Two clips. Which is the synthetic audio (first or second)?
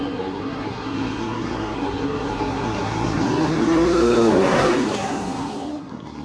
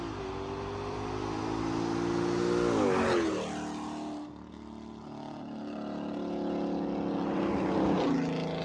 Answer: first